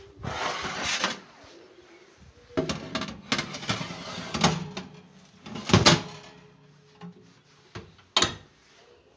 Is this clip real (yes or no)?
yes